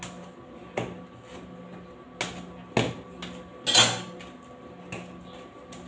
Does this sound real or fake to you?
real